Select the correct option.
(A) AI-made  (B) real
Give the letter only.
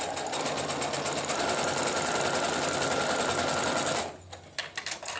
B